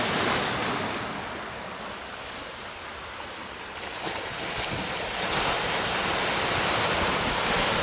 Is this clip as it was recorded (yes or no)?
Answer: yes